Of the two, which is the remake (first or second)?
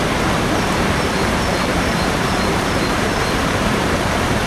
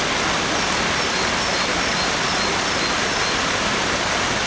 first